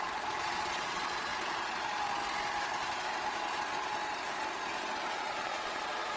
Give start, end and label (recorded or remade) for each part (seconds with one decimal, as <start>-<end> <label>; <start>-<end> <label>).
0.0-1.3 remade; 1.3-5.0 recorded; 5.0-6.2 remade